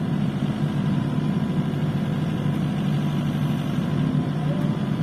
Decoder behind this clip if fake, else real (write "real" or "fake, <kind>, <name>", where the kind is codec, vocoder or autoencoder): real